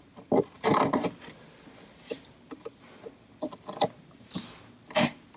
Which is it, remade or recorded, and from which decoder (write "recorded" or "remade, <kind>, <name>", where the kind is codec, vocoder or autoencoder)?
recorded